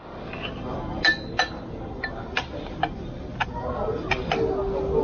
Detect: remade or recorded recorded